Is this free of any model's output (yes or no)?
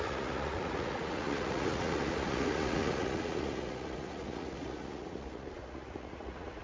no